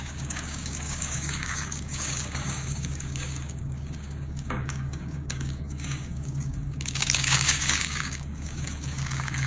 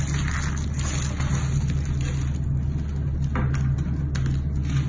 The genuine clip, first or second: second